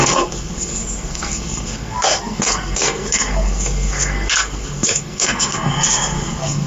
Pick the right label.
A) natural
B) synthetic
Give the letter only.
B